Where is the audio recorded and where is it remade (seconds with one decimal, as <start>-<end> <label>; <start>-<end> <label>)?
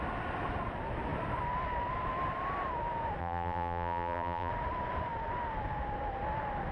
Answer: 0.0-3.2 recorded; 3.2-4.5 remade; 4.5-6.7 recorded